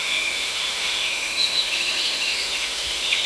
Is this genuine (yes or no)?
no